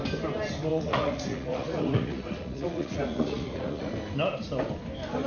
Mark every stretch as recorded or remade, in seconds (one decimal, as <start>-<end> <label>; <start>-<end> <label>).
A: 0.0-0.7 recorded; 0.7-3.9 remade; 3.9-5.3 recorded